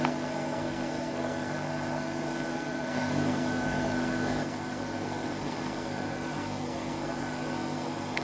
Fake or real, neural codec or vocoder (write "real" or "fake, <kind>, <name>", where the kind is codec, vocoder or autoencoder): fake, codec, SNAC